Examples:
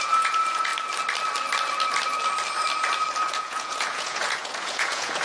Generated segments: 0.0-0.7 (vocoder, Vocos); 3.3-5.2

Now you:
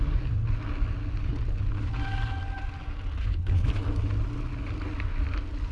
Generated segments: 3.2-3.7 (codec, HILCodec)

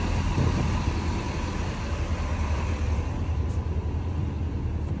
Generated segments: none

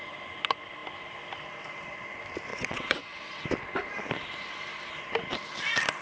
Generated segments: 2.5-3.4 (vocoder, WaveNeXt)

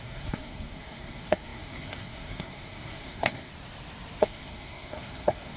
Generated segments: 0.0-3.5 (codec, SNAC); 4.2-5.6

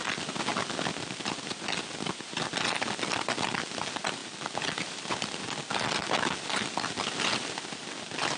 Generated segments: none